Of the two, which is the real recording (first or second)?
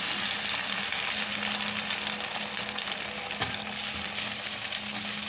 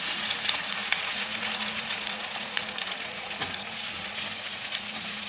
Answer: first